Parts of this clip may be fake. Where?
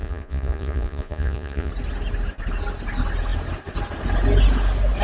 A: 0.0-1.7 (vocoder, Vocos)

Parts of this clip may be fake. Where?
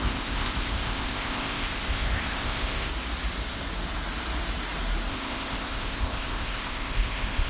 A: 0.0-2.9 (codec, ZipCodec); 5.1-7.5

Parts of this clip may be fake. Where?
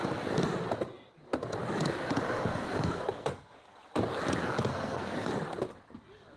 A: 2.5-3.8 (codec, SNAC); 4.7-5.3